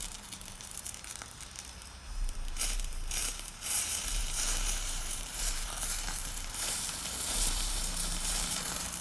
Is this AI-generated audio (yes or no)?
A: yes